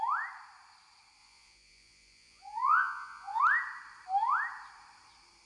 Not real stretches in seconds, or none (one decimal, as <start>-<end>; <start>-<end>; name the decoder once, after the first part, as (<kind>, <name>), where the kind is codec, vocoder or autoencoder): 1.2-3.4 (vocoder, Vocos)